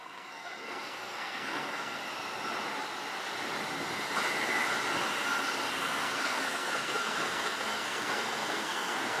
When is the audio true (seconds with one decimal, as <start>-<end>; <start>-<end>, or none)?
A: 2.0-5.7